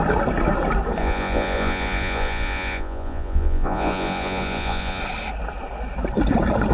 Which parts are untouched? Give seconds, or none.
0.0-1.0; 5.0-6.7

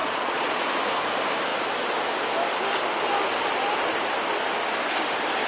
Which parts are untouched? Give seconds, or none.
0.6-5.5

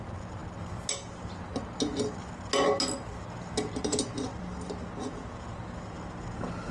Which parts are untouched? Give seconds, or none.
0.0-5.0; 5.6-6.7

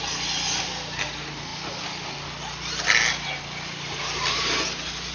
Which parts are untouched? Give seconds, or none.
0.0-5.1